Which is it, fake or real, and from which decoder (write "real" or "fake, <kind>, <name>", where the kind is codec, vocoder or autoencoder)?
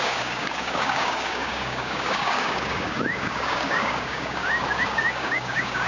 fake, codec, DAC